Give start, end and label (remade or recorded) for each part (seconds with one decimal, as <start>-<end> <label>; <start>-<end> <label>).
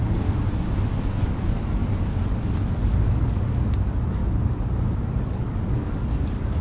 0.0-1.8 remade; 1.8-2.7 recorded; 2.7-4.2 remade; 4.2-5.2 recorded; 5.2-6.6 remade